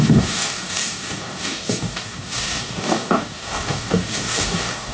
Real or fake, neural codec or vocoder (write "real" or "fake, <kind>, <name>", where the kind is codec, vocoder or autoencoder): fake, codec, DAC